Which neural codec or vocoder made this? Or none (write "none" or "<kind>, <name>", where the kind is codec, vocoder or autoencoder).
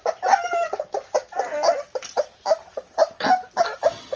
none